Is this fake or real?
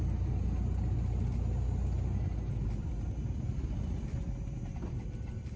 real